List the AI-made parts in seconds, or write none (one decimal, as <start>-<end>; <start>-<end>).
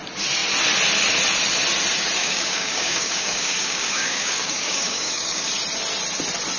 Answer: 2.2-5.5